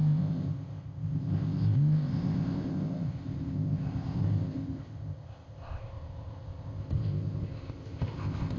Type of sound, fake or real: fake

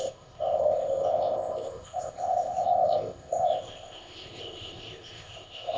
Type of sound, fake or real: fake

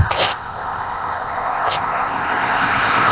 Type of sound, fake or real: fake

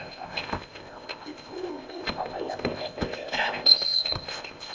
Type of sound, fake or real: fake